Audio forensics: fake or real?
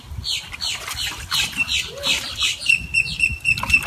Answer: real